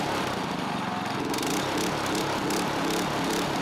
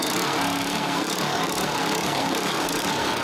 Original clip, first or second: first